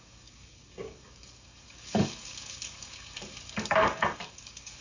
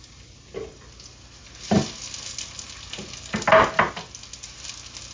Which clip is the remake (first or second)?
first